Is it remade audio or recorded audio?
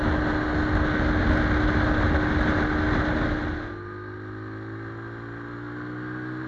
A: recorded